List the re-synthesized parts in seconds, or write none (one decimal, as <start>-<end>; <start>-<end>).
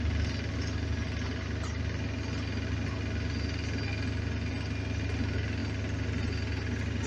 none